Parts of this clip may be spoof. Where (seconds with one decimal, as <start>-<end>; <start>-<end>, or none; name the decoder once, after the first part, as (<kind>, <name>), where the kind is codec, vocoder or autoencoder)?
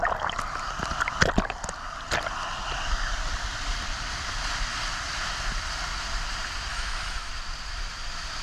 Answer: 6.7-7.3 (autoencoder, DAC-VAE)